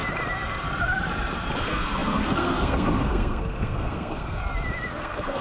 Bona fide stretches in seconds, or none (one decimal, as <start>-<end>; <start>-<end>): 0.0-1.6; 4.4-5.0